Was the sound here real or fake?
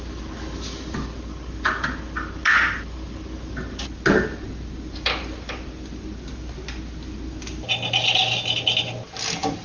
real